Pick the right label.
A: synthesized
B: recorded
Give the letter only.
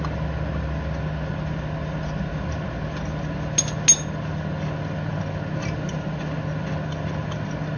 B